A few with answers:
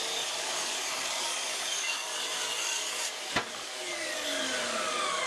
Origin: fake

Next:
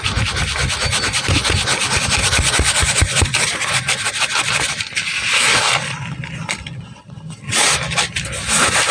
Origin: real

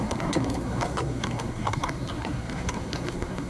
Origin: fake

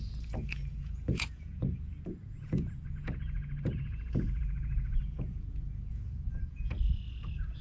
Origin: fake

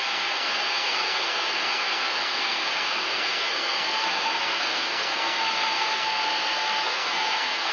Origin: fake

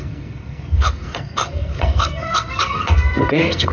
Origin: fake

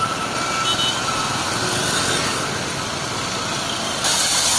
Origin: real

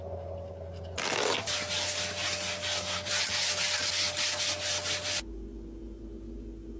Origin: real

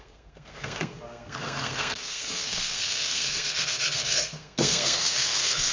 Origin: fake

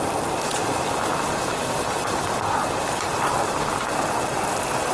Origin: real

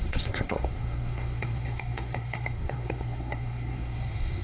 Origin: fake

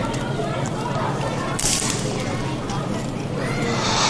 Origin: real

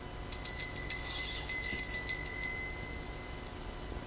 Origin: real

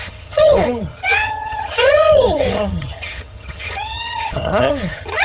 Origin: fake